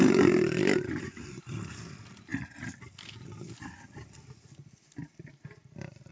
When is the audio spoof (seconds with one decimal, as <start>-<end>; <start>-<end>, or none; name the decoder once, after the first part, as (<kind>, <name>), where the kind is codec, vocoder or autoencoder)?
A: none